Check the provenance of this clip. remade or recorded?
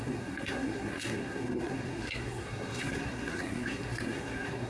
remade